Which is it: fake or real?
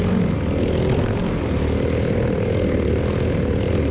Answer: real